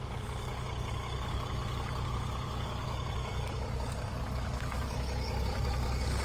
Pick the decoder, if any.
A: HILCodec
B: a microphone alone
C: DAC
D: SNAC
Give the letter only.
C